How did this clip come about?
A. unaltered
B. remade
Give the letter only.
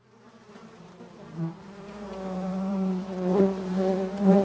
B